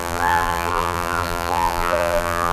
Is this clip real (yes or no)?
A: no